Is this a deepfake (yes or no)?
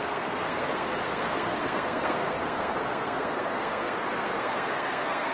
yes